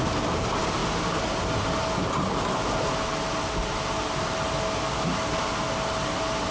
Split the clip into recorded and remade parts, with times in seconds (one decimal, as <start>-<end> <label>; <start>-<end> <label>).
0.0-6.5 recorded

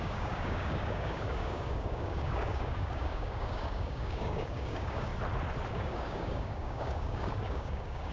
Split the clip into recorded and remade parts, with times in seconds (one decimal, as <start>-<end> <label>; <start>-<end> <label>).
0.0-5.1 remade; 5.1-5.7 recorded; 5.7-8.1 remade

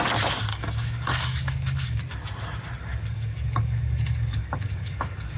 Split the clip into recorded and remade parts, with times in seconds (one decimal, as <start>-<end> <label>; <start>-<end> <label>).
0.0-0.5 recorded; 0.5-2.0 remade; 2.0-2.8 recorded; 2.8-5.4 remade

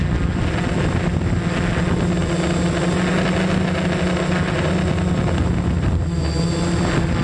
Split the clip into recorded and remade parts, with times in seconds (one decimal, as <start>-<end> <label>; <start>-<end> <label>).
0.0-7.2 recorded

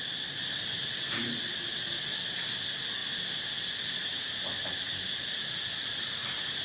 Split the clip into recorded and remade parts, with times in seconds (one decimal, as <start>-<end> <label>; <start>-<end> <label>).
0.0-6.6 recorded

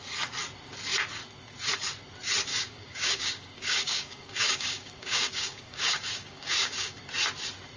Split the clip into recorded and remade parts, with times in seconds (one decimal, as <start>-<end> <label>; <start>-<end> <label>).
0.0-2.5 recorded; 2.5-7.0 remade; 7.0-7.8 recorded

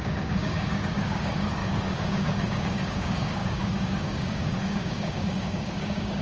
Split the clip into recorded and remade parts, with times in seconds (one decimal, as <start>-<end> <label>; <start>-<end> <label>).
0.0-6.2 remade

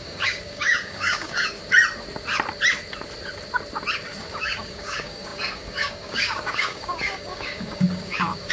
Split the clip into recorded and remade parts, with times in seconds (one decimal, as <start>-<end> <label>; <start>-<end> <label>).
0.0-1.6 remade; 1.6-4.3 recorded; 4.3-8.5 remade